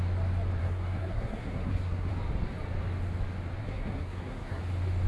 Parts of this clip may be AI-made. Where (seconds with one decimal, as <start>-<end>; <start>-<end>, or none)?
0.6-2.1; 3.6-4.6